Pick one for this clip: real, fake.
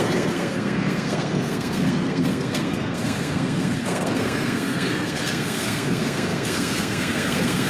fake